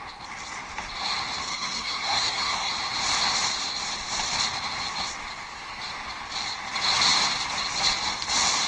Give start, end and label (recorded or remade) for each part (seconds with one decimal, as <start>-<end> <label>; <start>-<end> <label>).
0.0-1.5 recorded; 1.5-2.7 remade; 2.7-8.7 recorded